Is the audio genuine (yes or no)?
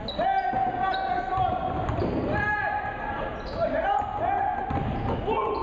yes